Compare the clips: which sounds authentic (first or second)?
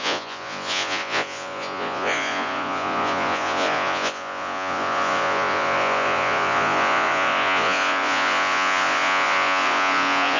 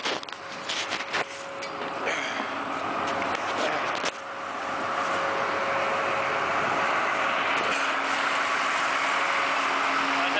second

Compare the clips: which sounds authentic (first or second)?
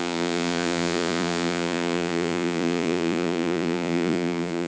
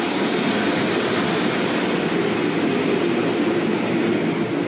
second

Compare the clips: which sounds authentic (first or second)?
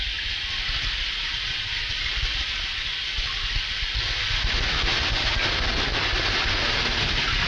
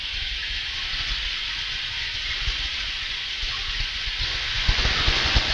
first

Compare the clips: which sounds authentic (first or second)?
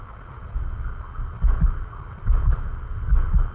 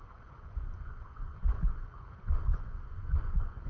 first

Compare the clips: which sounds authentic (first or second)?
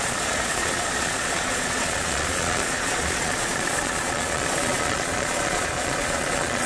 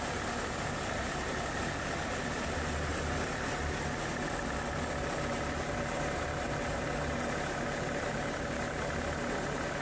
second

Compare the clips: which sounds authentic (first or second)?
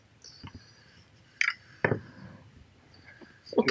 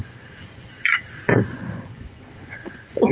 first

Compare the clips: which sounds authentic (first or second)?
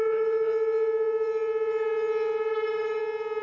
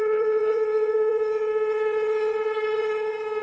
first